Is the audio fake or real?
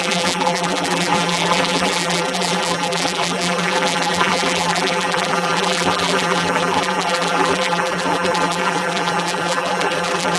fake